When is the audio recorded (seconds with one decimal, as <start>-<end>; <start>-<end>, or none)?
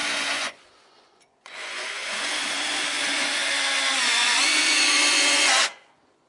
3.4-4.0